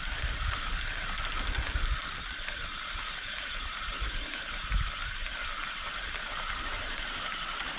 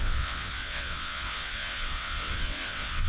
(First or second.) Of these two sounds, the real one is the first